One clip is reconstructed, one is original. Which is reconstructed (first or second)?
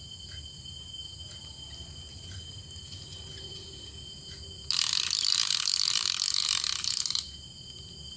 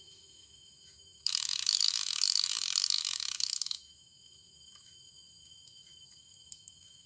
second